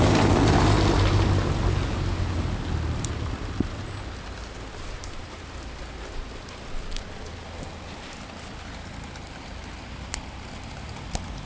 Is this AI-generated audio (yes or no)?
no